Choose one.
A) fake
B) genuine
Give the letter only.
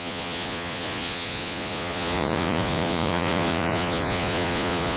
A